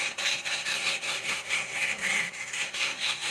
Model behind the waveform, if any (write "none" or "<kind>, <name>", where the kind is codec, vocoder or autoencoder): codec, SNAC